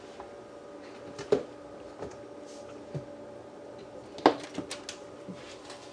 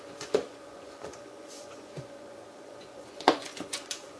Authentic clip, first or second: first